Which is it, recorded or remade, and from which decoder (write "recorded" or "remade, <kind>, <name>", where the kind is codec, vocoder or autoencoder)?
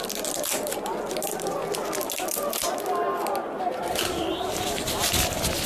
recorded